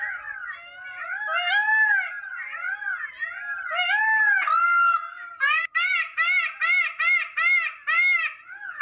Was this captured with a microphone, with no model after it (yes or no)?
yes